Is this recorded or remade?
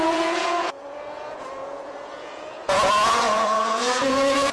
remade